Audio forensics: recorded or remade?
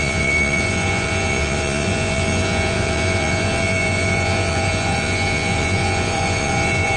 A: remade